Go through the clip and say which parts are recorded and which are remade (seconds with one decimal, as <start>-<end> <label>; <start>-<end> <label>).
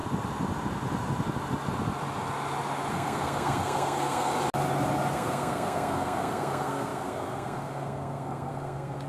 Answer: 0.0-2.9 recorded; 2.9-4.3 remade; 4.3-5.1 recorded; 5.1-9.1 remade